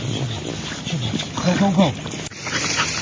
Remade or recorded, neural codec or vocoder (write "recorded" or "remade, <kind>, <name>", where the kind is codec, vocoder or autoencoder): recorded